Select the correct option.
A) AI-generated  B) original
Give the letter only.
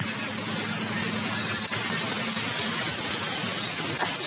B